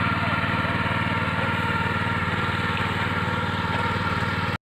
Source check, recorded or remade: recorded